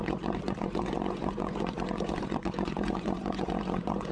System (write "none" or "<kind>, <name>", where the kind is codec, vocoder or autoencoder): vocoder, Vocos